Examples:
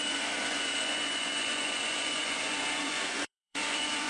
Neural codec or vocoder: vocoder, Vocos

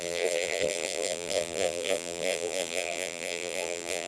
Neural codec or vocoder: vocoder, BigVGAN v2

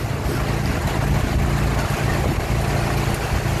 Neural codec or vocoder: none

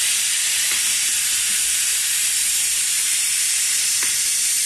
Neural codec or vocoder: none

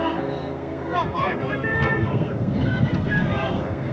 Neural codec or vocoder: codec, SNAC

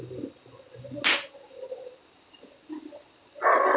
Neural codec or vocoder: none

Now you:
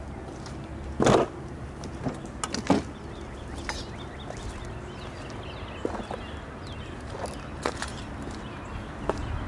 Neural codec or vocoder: none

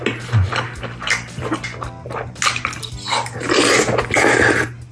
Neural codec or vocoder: none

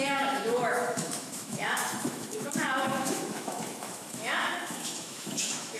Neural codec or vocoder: autoencoder, DAC-VAE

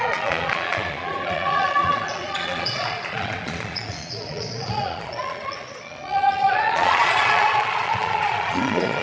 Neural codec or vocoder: vocoder, Vocos